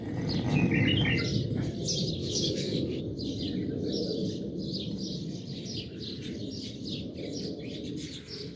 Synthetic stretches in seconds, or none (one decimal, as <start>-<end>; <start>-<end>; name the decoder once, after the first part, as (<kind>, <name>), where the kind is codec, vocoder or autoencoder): 2.2-3.0 (codec, DAC)